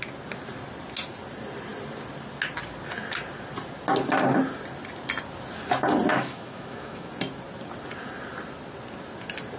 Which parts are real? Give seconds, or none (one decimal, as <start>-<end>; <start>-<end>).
0.0-6.1; 7.1-9.6